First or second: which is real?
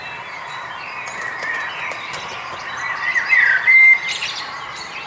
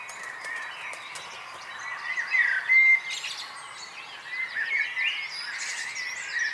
second